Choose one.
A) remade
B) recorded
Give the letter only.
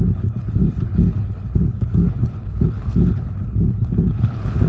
A